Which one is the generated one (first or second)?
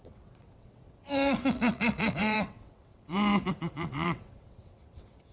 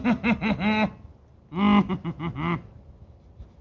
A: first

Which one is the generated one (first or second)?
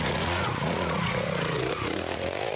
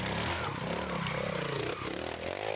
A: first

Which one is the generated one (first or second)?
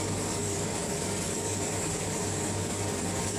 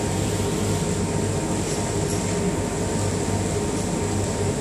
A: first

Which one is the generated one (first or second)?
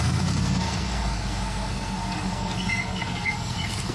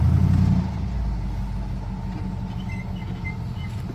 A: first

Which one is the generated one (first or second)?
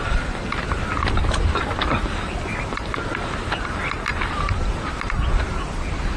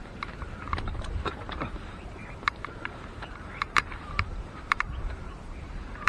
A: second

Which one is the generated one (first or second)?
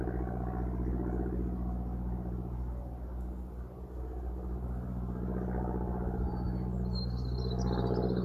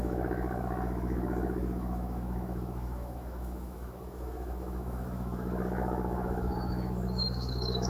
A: second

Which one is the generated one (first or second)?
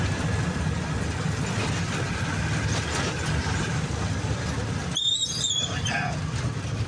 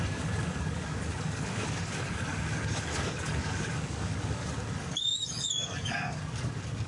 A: second